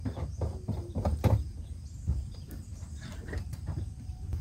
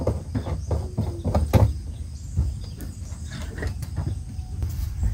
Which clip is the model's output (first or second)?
first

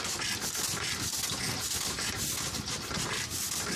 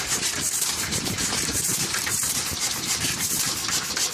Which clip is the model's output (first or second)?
second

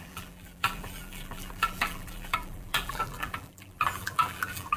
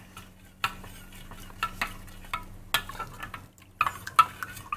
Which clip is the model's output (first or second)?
first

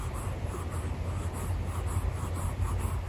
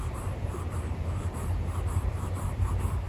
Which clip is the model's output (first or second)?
second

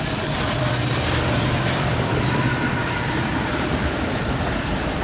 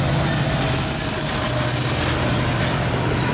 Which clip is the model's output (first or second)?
first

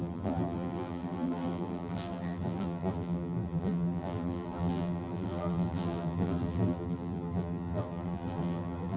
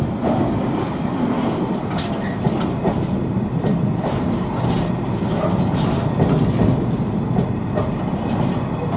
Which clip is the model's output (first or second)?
first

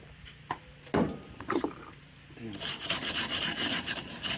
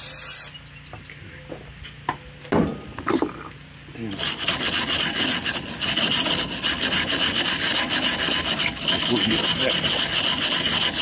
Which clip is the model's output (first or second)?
first